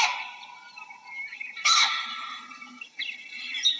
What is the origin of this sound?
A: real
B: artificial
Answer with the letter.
A